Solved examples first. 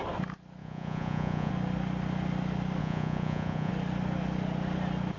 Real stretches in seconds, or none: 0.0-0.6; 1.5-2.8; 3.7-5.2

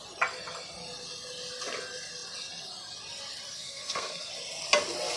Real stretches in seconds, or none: 0.0-3.5; 4.3-5.2

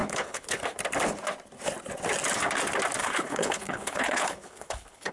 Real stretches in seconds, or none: 0.6-3.0

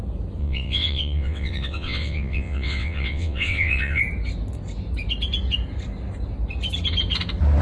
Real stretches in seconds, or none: 0.0-0.4; 4.0-7.6

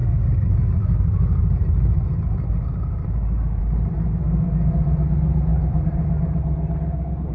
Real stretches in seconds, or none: 0.0-5.5; 6.4-7.3

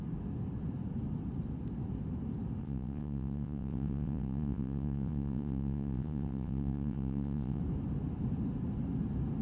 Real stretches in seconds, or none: 0.0-2.6; 7.6-9.4

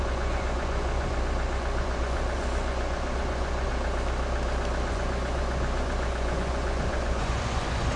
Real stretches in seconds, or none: 3.7-4.9

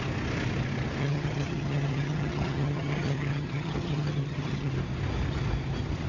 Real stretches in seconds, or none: 0.0-1.0; 4.7-6.1